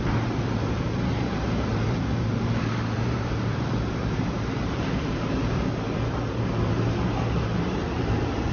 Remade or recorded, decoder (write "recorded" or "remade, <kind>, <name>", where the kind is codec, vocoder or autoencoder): remade, vocoder, BigVGAN v2